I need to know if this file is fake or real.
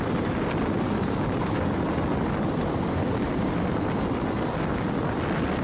real